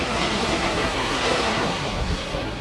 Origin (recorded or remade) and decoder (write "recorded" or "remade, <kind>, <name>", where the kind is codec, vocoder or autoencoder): remade, codec, SNAC